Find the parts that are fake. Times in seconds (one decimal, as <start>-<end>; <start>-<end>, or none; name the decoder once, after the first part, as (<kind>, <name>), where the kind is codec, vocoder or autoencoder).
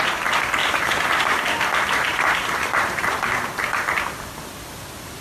0.6-1.4 (vocoder, BigVGAN v2); 2.1-3.2